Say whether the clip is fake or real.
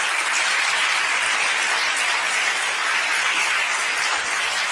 real